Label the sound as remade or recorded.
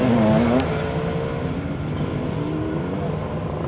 recorded